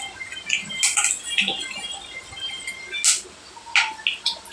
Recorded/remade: recorded